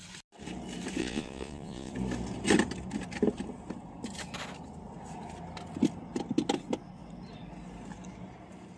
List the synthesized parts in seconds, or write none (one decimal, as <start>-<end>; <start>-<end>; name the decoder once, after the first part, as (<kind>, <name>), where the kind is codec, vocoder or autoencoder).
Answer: 1.0-1.9 (vocoder, Vocos)